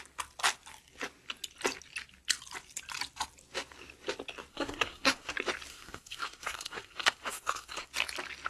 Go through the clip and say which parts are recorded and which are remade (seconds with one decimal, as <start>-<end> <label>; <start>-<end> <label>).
0.0-4.5 recorded; 4.5-5.3 remade; 5.3-5.7 recorded; 5.7-7.9 remade; 7.9-8.5 recorded